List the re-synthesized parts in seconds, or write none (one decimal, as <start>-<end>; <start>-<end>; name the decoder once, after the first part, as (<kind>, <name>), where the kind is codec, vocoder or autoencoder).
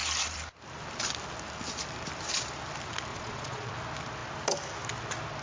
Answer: 3.1-3.7 (vocoder, Vocos)